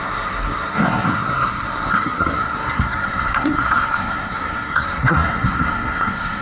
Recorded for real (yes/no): no